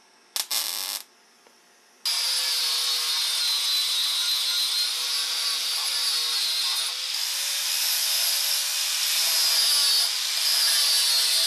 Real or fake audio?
real